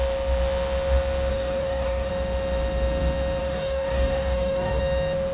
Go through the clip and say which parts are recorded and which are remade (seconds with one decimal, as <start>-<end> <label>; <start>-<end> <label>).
0.0-1.3 recorded; 1.3-2.1 remade; 2.1-3.4 recorded; 3.4-4.8 remade; 4.8-5.3 recorded